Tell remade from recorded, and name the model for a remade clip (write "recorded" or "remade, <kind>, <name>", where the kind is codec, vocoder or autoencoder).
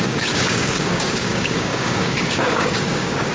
remade, codec, DAC